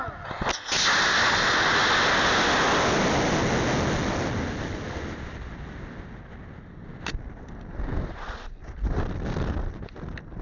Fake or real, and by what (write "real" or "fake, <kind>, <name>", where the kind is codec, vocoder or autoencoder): real